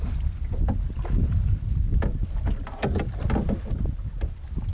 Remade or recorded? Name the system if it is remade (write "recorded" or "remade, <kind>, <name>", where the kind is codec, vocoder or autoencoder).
recorded